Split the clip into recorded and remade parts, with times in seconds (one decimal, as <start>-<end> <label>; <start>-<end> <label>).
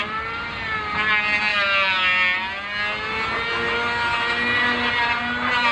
0.0-5.7 recorded